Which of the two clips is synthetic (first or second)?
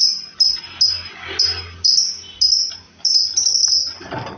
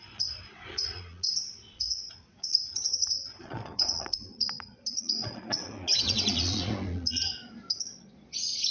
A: second